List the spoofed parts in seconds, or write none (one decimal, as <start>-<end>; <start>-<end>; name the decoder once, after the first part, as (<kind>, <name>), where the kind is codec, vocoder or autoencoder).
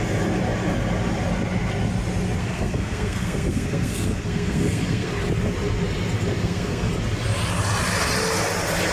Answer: 2.4-5.1 (codec, SNAC); 6.4-6.9